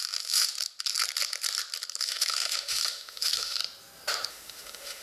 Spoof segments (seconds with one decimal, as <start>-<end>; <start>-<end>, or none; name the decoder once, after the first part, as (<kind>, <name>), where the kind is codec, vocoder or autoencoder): 0.0-0.5 (autoencoder, DAC-VAE); 2.0-3.6; 4.3-5.0